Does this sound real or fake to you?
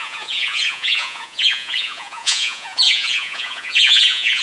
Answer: fake